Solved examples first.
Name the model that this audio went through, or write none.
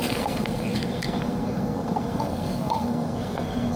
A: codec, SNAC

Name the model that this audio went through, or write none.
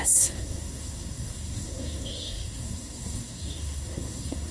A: codec, SNAC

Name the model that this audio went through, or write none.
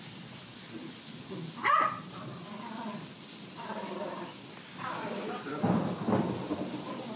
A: none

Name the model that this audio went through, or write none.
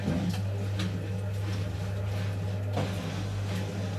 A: none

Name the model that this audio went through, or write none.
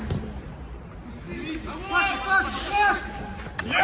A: none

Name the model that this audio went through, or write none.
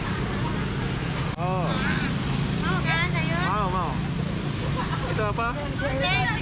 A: none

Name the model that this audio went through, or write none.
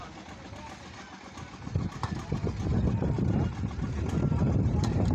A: none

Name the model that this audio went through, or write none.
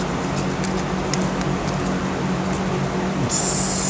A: none